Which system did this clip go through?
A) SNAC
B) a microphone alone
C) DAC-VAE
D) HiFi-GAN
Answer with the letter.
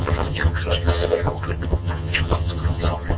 D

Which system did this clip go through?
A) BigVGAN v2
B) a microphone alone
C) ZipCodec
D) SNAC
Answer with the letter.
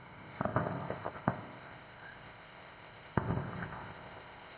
C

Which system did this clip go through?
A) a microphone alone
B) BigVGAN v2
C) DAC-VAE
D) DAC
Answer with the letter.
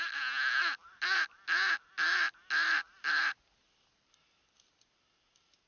A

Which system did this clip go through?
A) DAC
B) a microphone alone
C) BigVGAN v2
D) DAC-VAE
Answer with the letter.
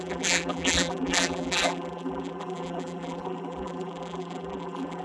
C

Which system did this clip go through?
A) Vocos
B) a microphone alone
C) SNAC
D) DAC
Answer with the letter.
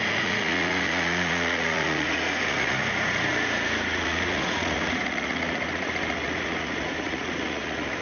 A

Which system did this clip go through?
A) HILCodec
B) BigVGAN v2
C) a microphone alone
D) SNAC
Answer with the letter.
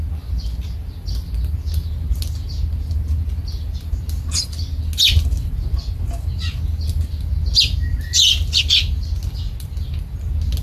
C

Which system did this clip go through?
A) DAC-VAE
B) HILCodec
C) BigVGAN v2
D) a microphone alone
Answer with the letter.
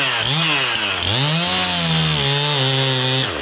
D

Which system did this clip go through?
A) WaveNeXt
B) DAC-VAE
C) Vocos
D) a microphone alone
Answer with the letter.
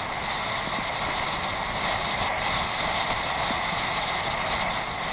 D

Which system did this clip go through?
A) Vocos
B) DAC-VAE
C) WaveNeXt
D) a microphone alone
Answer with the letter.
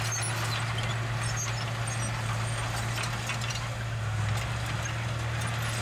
D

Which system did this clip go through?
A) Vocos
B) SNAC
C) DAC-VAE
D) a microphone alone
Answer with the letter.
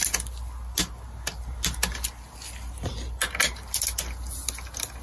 D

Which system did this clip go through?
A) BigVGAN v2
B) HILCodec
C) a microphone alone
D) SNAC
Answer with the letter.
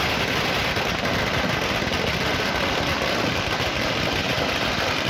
C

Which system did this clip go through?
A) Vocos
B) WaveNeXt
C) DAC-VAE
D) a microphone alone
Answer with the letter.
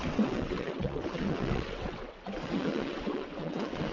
B